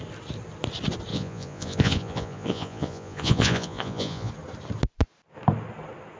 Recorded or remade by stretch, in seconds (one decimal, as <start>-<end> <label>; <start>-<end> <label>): 0.0-1.1 recorded; 1.1-4.3 remade; 4.3-6.2 recorded